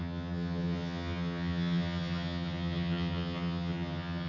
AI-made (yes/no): yes